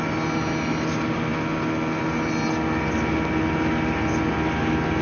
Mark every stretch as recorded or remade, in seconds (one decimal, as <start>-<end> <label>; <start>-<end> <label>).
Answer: 0.0-5.0 recorded